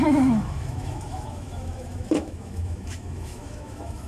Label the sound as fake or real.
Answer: fake